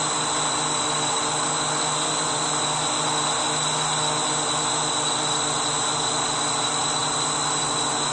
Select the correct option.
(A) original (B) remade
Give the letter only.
A